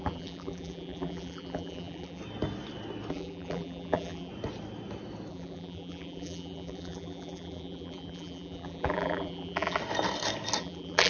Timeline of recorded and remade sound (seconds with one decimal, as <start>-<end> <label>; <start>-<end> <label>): 0.0-2.2 remade; 2.2-3.1 recorded; 3.1-4.3 remade; 4.3-5.3 recorded; 5.3-9.8 remade; 9.8-10.6 recorded; 10.6-11.1 remade